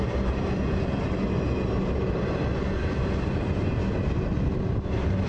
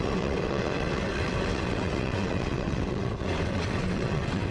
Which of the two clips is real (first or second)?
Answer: first